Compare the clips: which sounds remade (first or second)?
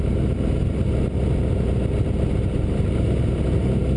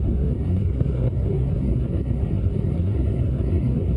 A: second